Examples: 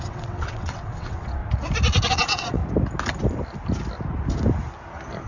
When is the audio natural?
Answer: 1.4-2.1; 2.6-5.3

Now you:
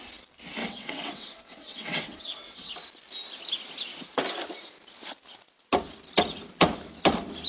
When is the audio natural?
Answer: 0.0-0.6; 2.7-7.5

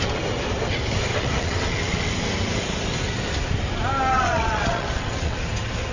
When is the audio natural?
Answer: 0.0-1.1; 2.1-4.1; 5.4-5.9

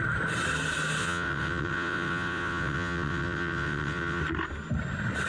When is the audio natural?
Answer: 0.0-1.0; 4.2-5.3